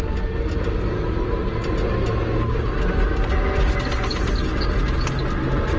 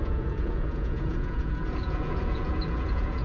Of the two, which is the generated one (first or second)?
second